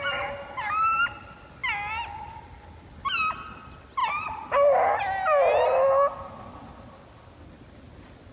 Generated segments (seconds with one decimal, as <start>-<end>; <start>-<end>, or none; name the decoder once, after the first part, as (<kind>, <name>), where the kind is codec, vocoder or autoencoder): none